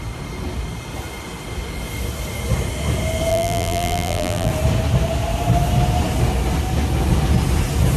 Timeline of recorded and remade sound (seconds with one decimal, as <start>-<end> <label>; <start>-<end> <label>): 0.0-3.3 recorded; 3.3-4.5 remade; 4.5-8.0 recorded